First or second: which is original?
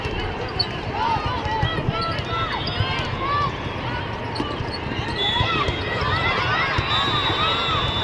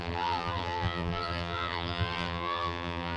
first